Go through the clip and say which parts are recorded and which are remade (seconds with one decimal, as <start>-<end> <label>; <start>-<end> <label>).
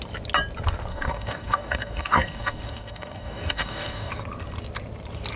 0.0-0.9 recorded; 0.9-4.1 remade; 4.1-5.4 recorded